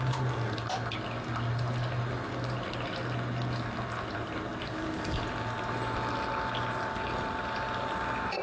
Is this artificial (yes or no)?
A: no